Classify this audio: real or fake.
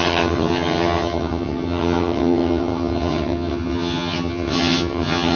fake